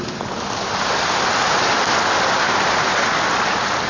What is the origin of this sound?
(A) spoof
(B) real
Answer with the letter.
B